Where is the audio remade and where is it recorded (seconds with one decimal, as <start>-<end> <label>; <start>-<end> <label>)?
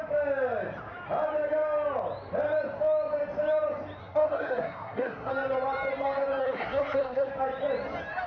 0.0-4.0 recorded; 4.0-5.3 remade; 5.3-6.4 recorded; 6.4-7.3 remade; 7.3-8.3 recorded